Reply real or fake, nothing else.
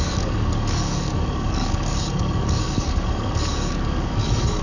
fake